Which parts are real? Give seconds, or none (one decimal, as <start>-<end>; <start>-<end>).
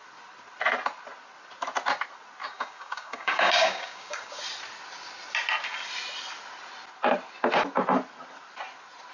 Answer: 0.0-2.4; 4.4-9.1